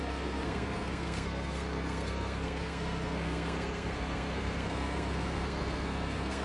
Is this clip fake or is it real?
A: fake